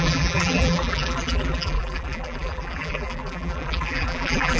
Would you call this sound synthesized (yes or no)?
yes